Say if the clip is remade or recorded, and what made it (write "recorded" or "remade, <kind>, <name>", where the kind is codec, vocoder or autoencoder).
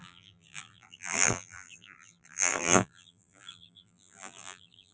remade, vocoder, BigVGAN v2